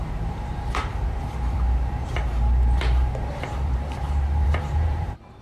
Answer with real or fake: fake